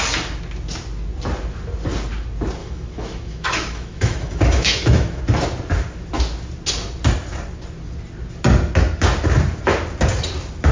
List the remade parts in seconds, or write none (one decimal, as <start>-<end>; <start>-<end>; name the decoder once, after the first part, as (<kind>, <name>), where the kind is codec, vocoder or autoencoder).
2.6-5.2 (autoencoder, DAC-VAE)